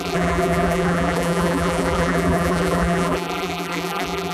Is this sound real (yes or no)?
no